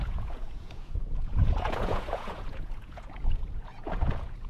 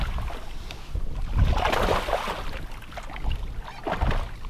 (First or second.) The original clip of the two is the second